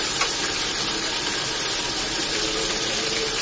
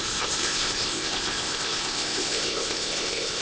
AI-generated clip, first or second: second